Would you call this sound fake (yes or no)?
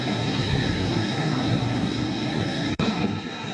yes